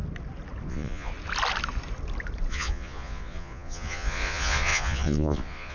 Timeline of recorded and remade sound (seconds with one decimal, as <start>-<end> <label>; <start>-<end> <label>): 0.0-0.7 recorded; 0.7-1.1 remade; 1.1-2.5 recorded; 2.5-5.7 remade